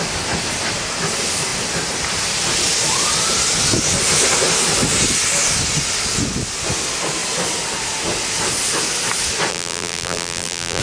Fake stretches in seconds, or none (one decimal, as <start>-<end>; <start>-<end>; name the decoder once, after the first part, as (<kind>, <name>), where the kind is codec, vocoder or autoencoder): 9.5-10.8 (vocoder, BigVGAN v2)

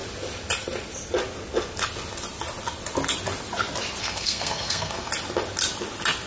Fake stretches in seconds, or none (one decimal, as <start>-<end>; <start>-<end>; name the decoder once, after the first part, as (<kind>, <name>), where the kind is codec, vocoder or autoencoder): 4.0-5.1 (codec, SNAC)

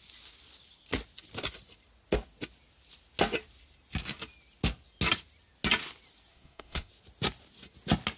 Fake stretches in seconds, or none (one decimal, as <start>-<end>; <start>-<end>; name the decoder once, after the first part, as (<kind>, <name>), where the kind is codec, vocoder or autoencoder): 6.3-6.9 (codec, SNAC)

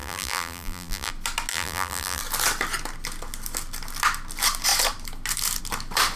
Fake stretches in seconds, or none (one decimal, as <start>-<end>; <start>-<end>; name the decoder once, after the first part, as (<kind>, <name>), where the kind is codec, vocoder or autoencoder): 0.0-1.1 (vocoder, BigVGAN v2); 1.5-2.2

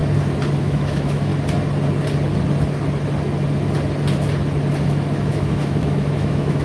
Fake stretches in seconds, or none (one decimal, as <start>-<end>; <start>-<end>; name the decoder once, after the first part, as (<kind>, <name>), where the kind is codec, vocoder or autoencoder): 0.6-1.3 (autoencoder, DAC-VAE); 5.3-6.6

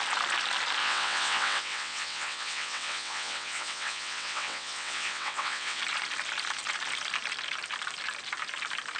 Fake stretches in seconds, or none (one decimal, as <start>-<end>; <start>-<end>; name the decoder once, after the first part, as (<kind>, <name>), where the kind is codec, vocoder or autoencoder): 0.8-5.8 (vocoder, WaveNeXt)